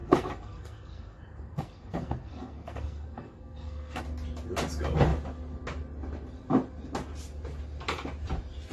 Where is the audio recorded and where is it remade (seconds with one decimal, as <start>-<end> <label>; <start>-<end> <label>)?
0.0-4.0 remade; 4.0-8.7 recorded